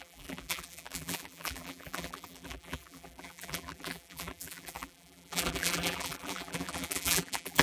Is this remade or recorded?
remade